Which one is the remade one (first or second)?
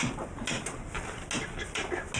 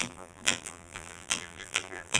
second